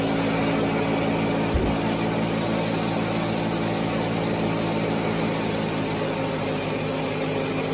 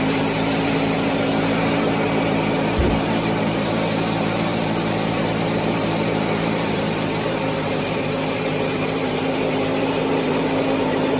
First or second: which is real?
first